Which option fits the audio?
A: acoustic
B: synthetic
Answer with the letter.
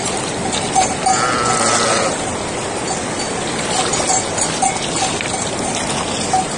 A